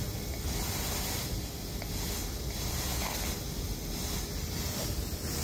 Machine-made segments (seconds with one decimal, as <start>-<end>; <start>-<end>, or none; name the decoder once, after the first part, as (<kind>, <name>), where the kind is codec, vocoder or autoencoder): none